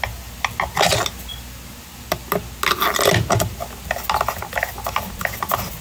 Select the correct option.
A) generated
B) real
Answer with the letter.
B